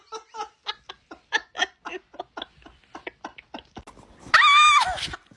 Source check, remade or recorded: recorded